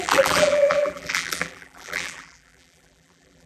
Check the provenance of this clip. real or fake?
fake